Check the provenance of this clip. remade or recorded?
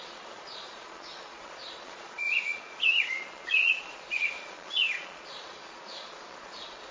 remade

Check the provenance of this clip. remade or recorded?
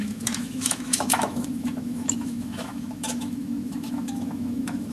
remade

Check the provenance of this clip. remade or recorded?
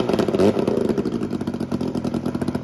recorded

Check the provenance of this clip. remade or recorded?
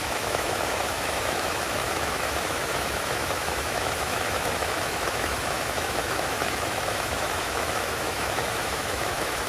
remade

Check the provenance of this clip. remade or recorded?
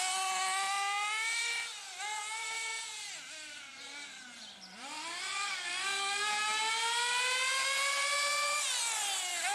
recorded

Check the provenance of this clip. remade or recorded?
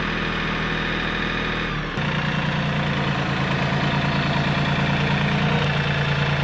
recorded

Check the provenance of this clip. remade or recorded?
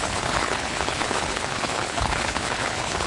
remade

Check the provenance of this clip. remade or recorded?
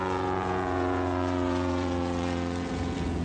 remade